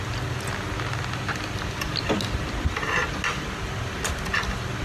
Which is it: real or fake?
real